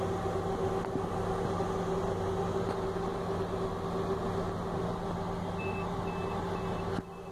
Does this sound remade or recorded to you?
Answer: recorded